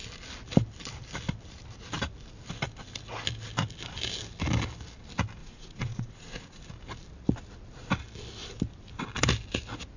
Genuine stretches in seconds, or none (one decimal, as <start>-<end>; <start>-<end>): 0.0-5.4; 6.6-10.0